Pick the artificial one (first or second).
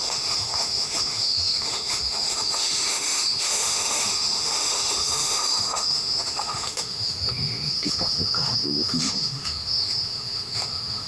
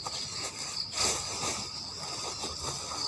first